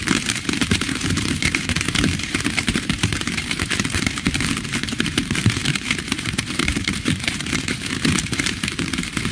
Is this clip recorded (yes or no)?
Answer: no